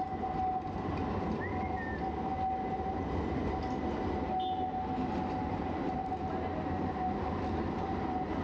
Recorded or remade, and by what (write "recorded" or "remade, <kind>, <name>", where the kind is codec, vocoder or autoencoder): recorded